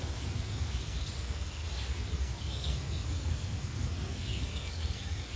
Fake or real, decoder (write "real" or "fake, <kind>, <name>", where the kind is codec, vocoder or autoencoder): fake, codec, SNAC